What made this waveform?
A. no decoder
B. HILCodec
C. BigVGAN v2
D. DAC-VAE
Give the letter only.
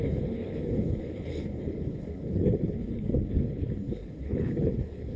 B